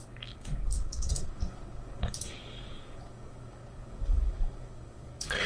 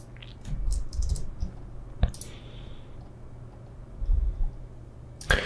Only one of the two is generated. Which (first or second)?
first